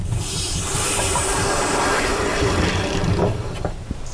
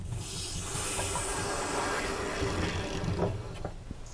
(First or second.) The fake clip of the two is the first